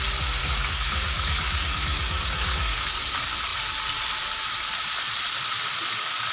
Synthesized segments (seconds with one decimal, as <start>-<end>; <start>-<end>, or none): 0.4-2.8